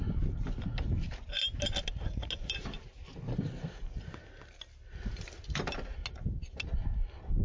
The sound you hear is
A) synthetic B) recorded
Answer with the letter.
B